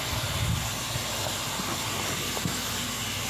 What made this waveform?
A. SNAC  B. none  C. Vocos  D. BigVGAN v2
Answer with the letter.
B